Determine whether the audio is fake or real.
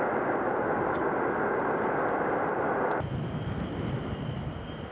real